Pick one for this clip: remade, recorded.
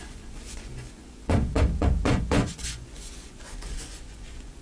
remade